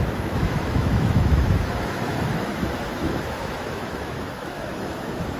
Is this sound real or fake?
fake